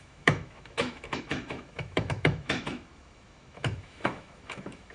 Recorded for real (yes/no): no